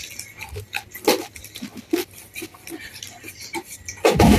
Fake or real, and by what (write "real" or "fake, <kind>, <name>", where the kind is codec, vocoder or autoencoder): real